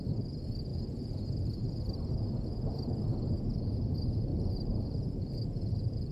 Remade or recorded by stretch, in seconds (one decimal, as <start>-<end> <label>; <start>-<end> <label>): 0.0-0.7 recorded; 0.7-1.6 remade; 1.6-4.3 recorded; 4.3-5.3 remade; 5.3-6.1 recorded